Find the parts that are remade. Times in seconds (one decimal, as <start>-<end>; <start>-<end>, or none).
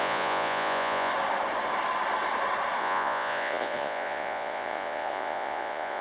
0.0-1.1; 2.8-6.0